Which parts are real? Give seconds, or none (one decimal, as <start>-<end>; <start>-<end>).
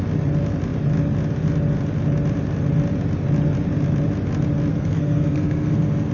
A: 0.0-4.7